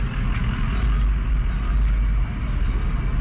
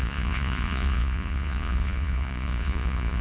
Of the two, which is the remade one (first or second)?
second